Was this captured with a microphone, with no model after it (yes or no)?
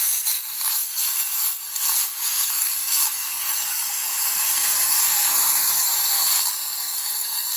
no